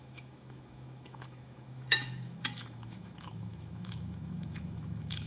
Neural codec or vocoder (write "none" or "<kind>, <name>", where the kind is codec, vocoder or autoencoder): autoencoder, DAC-VAE